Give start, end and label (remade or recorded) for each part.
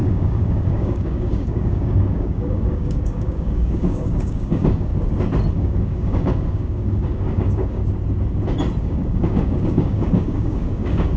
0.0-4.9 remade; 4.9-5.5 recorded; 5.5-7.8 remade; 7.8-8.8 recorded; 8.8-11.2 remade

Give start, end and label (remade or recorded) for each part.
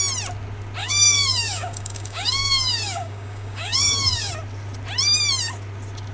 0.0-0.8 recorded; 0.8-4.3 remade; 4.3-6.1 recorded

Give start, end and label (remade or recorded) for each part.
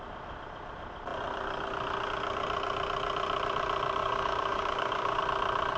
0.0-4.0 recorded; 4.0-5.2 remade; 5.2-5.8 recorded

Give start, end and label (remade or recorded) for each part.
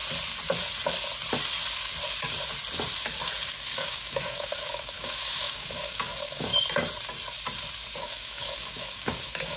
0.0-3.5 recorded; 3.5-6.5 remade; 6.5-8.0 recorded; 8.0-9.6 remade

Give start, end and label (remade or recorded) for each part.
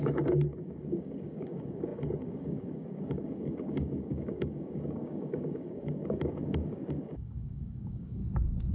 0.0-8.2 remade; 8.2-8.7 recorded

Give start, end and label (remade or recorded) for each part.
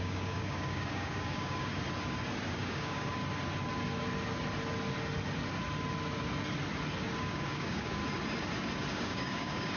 0.0-1.7 remade; 1.7-2.5 recorded; 2.5-3.2 remade; 3.2-7.2 recorded; 7.2-8.0 remade; 8.0-8.9 recorded; 8.9-9.8 remade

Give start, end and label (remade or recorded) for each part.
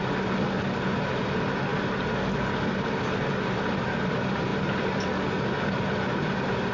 0.0-6.7 recorded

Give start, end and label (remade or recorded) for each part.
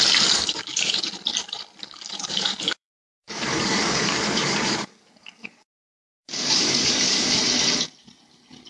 0.0-1.1 remade; 1.1-1.8 recorded; 1.8-7.4 remade; 7.4-8.7 recorded